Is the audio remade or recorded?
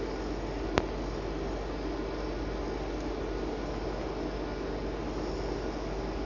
recorded